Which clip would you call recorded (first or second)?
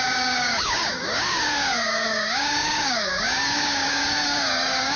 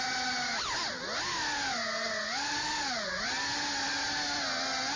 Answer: second